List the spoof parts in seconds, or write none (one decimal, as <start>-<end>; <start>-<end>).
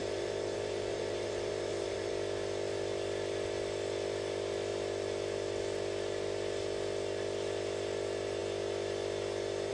0.0-2.1